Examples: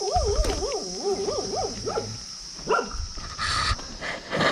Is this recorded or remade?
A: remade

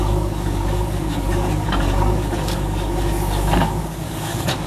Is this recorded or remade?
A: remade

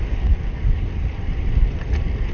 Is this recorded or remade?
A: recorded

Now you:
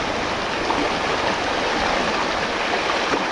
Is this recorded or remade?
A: recorded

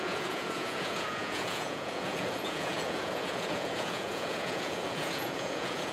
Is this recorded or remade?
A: remade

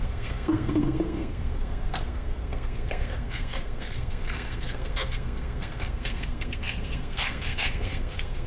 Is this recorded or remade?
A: remade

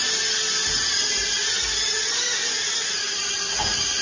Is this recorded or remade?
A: recorded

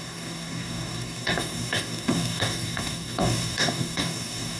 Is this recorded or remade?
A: remade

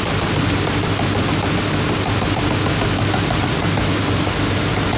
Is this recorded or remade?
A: recorded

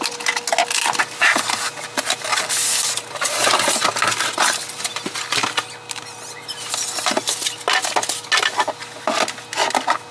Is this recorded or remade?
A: recorded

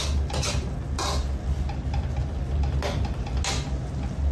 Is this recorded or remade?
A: recorded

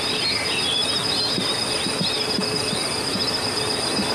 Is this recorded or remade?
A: recorded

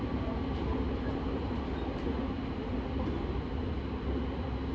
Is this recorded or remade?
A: recorded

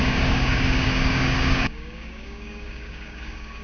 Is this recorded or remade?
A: remade